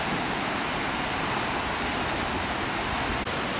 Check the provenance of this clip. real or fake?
real